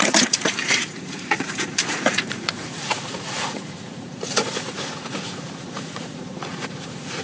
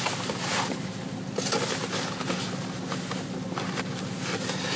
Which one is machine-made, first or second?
first